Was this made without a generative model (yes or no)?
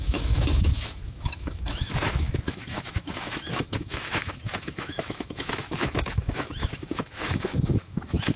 no